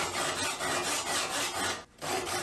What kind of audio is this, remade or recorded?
recorded